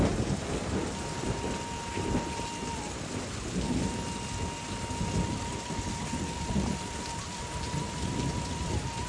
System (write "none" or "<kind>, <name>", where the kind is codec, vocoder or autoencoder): none